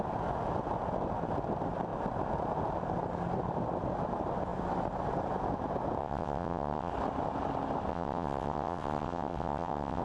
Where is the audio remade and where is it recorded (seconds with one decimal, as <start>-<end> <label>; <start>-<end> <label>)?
0.0-6.0 recorded; 6.0-6.9 remade; 6.9-7.9 recorded; 7.9-10.0 remade